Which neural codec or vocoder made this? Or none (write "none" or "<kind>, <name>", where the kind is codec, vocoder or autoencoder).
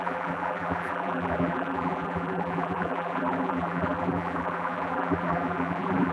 vocoder, BigVGAN v2